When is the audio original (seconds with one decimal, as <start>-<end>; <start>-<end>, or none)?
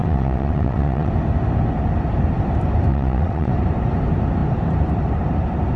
1.1-2.9; 3.5-5.8